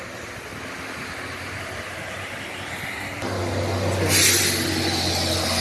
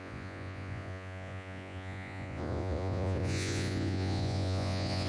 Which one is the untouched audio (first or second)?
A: first